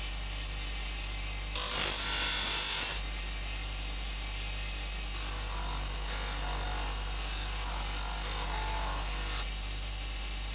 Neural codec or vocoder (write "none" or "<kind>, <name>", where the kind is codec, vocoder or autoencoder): none